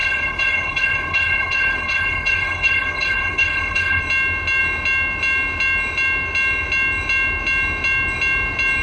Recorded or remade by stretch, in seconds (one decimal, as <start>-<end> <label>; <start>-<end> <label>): 0.0-4.0 remade; 4.0-8.8 recorded